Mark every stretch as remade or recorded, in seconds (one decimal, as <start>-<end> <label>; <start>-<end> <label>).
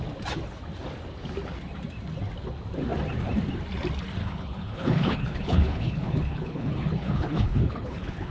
0.0-4.2 recorded; 4.2-8.3 remade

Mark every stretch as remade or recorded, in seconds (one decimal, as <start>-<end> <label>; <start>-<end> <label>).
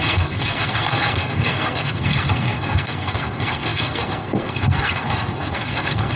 0.0-6.2 remade